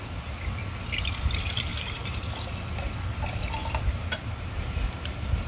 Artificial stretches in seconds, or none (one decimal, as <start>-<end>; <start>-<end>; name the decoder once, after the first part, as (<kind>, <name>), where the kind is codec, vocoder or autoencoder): 1.7-2.3 (vocoder, BigVGAN v2); 3.6-5.5